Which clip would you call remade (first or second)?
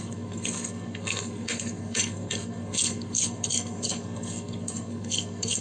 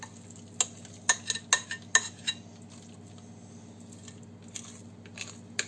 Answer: first